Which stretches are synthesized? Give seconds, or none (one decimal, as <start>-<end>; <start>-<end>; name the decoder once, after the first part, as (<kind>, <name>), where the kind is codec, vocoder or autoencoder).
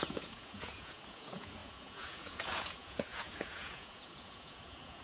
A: 0.0-5.0 (vocoder, Vocos)